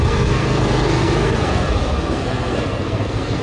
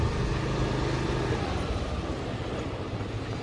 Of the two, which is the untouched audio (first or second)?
second